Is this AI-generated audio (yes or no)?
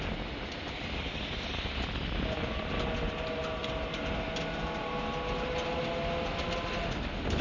no